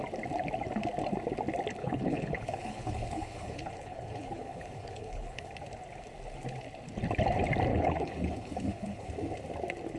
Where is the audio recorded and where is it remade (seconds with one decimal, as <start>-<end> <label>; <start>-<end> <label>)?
0.0-1.8 recorded; 1.8-5.5 remade; 5.5-7.7 recorded; 7.7-9.1 remade; 9.1-10.0 recorded